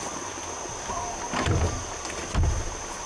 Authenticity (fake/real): real